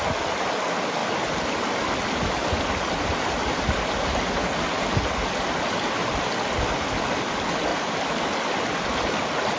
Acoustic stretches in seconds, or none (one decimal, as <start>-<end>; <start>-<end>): 0.0-9.6